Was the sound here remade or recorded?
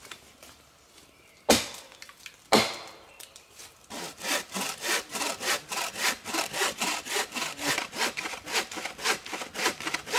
remade